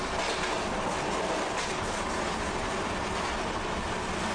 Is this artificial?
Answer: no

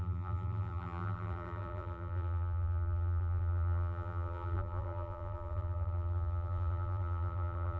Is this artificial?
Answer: yes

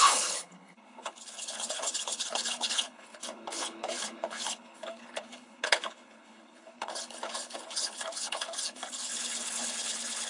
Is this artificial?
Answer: yes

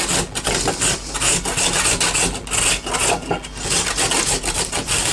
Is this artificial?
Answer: no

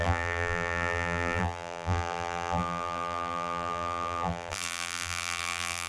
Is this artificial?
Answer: yes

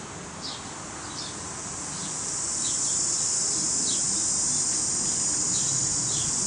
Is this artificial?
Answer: no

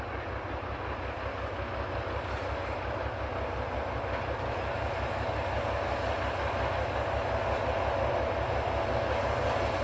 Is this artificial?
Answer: no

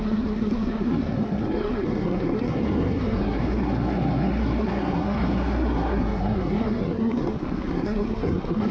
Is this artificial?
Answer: yes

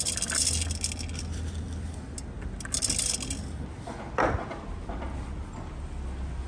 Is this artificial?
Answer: no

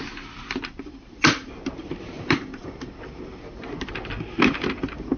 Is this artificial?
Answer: no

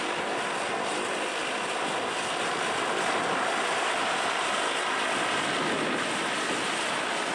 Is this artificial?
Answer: no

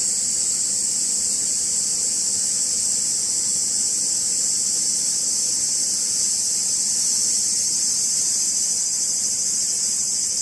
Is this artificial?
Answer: no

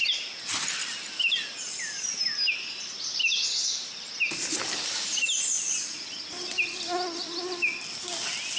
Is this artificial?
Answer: no